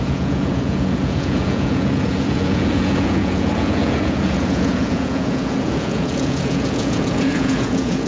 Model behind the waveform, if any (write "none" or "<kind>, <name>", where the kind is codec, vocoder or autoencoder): vocoder, Vocos